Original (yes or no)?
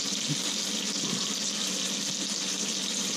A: yes